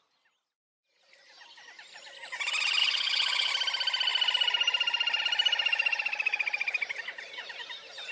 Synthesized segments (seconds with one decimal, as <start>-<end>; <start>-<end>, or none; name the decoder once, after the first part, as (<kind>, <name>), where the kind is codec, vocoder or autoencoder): 2.8-3.5 (codec, HILCodec)